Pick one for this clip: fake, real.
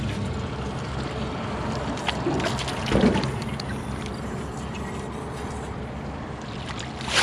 real